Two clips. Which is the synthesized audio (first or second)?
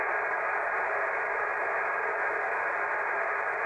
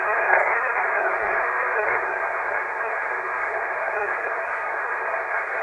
second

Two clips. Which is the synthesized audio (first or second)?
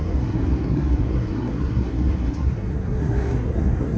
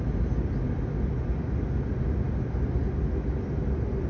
first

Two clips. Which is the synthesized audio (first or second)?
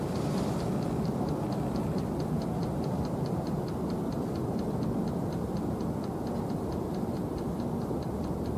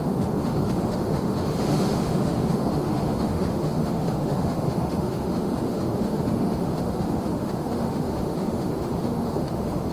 second